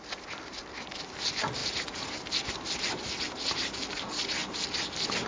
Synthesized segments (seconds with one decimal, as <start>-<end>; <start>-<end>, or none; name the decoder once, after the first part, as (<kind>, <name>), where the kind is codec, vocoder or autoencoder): none

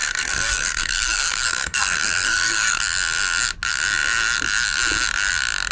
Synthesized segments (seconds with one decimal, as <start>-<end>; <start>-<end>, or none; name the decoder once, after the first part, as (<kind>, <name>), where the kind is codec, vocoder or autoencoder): 0.0-2.8 (codec, SNAC)